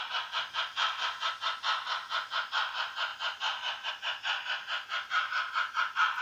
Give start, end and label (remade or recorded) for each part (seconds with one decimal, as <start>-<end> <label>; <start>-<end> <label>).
0.0-0.7 recorded; 0.7-1.3 remade; 1.3-6.2 recorded